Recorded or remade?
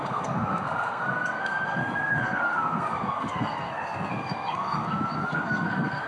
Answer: remade